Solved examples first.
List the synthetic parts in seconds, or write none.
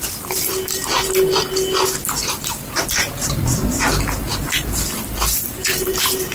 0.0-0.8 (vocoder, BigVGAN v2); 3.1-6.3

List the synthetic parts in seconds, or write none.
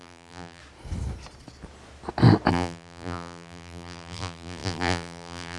0.0-0.6 (vocoder, BigVGAN v2); 2.5-5.6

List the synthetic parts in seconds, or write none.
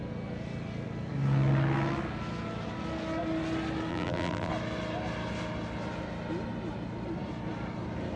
3.9-4.5 (vocoder, BigVGAN v2)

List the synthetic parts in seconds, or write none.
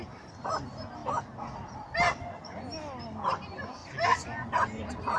none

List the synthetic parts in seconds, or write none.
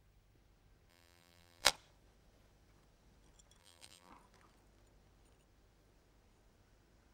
0.9-1.7 (vocoder, BigVGAN v2); 3.6-4.1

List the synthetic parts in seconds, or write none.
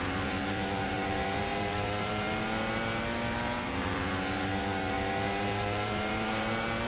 0.0-4.5 (vocoder, BigVGAN v2); 5.4-6.9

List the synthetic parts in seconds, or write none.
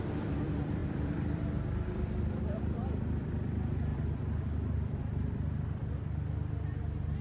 0.0-7.2 (vocoder, BigVGAN v2)